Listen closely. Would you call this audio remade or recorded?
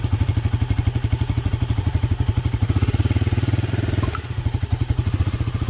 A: remade